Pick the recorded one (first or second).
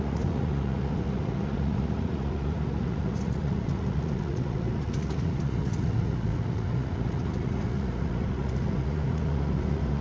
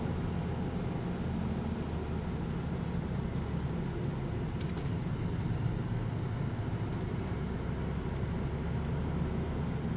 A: second